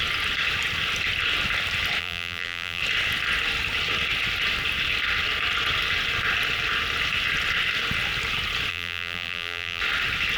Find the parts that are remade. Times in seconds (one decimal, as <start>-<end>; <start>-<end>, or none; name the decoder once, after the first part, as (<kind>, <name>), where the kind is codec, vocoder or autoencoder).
2.0-2.8 (vocoder, BigVGAN v2); 8.7-9.8